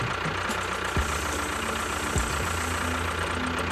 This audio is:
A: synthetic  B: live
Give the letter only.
B